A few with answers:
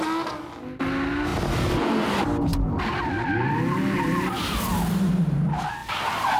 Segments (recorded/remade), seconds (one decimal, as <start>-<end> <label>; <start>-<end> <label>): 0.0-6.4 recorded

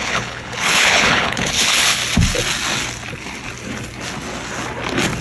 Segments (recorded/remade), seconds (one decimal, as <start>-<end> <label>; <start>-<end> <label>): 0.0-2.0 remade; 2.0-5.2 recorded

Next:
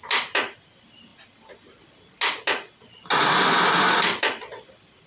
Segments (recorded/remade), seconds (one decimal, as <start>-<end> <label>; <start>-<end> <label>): 0.0-5.1 recorded

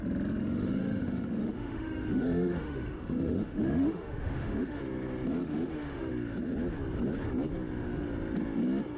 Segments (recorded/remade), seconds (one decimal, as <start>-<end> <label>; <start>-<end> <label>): 0.0-0.4 recorded; 0.4-4.8 remade; 4.8-5.4 recorded; 5.4-6.1 remade; 6.1-9.0 recorded

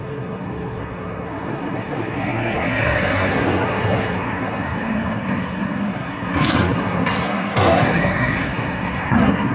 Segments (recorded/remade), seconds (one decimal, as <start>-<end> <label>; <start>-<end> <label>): 0.0-9.5 remade

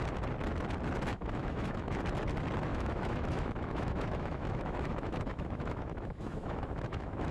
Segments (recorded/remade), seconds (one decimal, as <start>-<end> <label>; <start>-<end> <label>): 0.0-1.1 recorded; 1.1-2.0 remade; 2.0-2.7 recorded; 2.7-7.3 remade